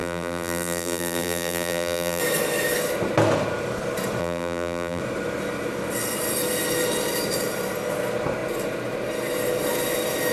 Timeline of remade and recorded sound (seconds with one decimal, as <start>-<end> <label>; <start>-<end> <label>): 0.0-2.2 remade; 2.2-4.2 recorded; 4.2-5.0 remade; 5.0-10.3 recorded

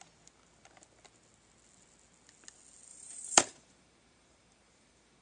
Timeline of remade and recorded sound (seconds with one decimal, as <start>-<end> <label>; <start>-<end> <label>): 0.0-2.9 recorded; 2.9-5.2 remade

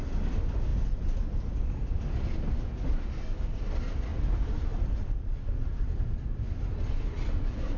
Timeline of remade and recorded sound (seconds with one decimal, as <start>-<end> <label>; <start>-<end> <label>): 0.0-4.1 recorded; 4.1-6.4 remade; 6.4-7.8 recorded